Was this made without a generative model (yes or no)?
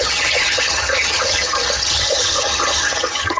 no